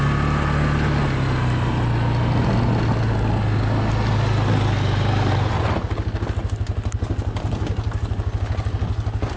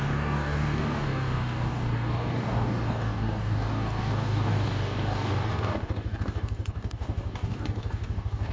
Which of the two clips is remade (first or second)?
second